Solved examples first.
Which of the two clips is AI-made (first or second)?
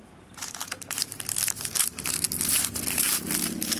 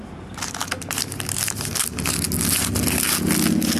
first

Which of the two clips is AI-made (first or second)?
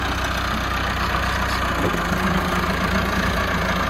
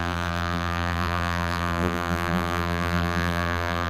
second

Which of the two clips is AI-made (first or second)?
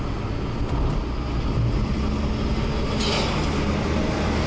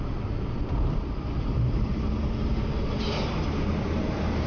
second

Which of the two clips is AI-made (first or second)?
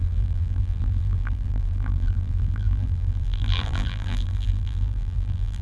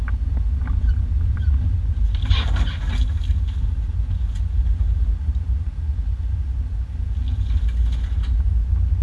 first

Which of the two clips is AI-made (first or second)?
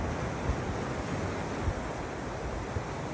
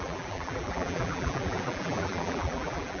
second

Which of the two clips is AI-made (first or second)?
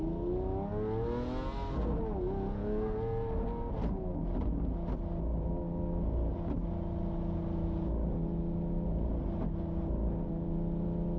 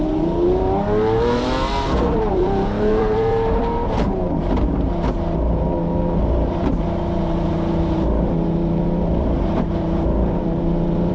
second